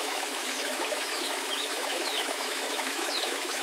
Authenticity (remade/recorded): remade